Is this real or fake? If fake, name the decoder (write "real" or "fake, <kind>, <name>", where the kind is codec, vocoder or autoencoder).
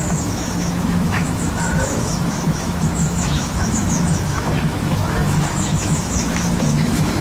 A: fake, autoencoder, DAC-VAE